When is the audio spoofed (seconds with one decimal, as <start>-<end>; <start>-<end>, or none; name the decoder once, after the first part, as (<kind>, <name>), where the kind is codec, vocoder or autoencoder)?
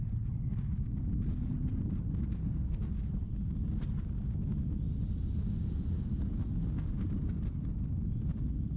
2.4-2.9 (codec, SNAC)